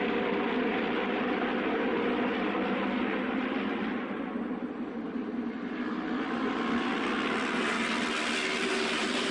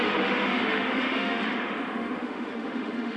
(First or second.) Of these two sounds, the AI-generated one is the second